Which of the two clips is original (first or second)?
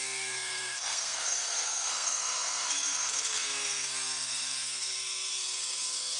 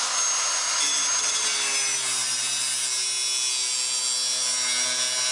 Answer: second